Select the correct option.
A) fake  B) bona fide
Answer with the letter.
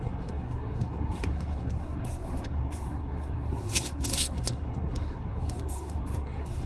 A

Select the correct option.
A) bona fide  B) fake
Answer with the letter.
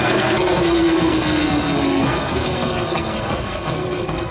B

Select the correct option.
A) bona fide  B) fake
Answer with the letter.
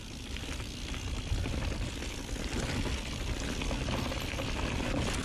A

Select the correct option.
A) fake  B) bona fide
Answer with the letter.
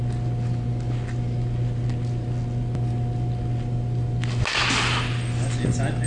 B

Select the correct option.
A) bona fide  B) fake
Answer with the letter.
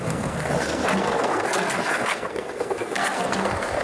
B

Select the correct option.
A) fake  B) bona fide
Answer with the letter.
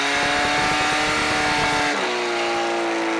B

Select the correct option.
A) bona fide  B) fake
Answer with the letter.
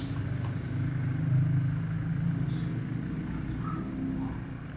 A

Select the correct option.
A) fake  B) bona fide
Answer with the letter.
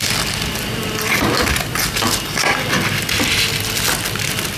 B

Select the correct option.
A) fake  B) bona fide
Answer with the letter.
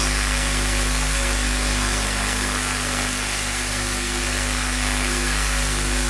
A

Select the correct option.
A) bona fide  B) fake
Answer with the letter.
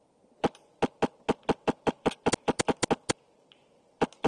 A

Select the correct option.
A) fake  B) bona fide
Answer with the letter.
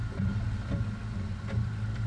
B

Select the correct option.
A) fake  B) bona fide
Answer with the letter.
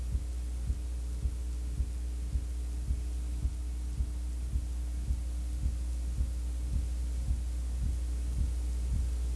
B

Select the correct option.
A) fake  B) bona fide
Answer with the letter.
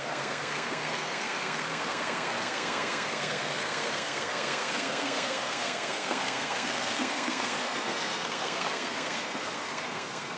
A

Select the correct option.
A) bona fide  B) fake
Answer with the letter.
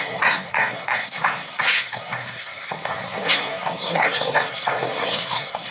B